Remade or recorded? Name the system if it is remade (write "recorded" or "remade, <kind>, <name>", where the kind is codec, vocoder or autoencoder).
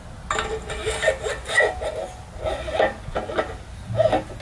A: recorded